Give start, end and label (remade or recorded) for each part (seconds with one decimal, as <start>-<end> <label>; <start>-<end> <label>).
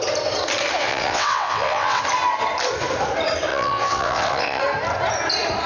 0.0-0.8 recorded; 0.8-2.0 remade; 2.0-3.5 recorded; 3.5-4.6 remade; 4.6-5.7 recorded